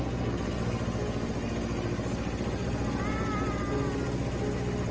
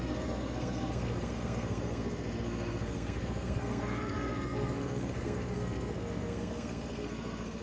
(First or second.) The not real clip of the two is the second